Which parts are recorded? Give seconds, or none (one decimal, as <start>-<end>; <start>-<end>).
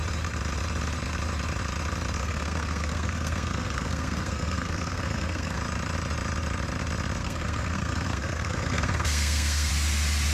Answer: 0.0-2.2; 5.6-7.2; 9.7-10.3